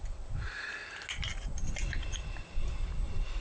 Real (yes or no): yes